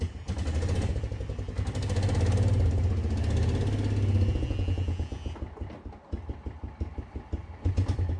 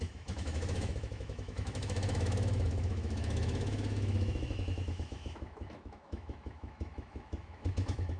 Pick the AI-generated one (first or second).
second